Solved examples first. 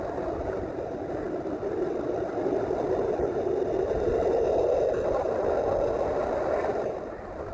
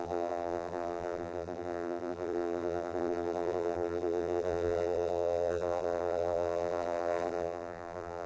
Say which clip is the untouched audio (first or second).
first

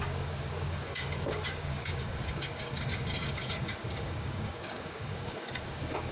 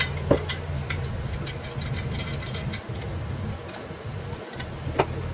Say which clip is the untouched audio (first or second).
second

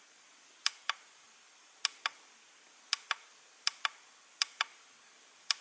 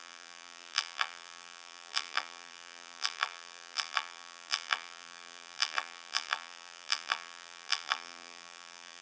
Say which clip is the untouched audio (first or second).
first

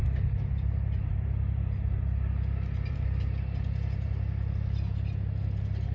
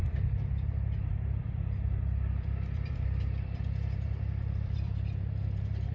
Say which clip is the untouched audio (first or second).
first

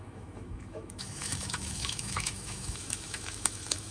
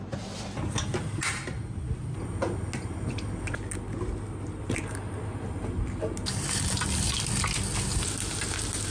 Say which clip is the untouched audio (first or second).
second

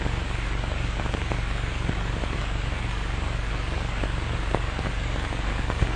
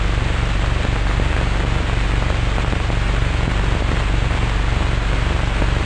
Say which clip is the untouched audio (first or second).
second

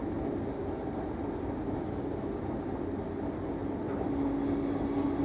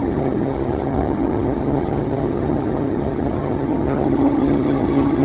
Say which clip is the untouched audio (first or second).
first